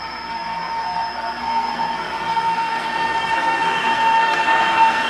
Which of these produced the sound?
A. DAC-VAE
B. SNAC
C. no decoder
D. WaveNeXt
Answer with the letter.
B